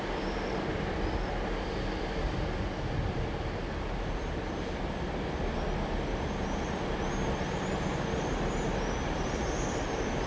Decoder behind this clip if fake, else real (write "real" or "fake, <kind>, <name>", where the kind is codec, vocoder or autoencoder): real